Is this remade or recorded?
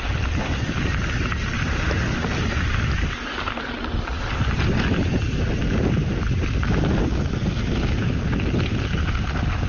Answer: recorded